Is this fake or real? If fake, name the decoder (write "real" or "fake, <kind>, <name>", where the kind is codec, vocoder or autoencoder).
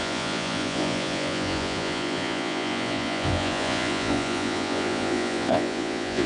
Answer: fake, vocoder, Vocos